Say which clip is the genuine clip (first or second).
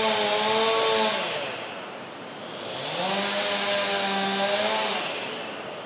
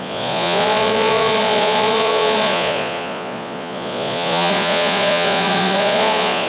first